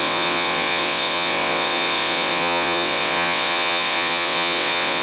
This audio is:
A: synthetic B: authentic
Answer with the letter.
A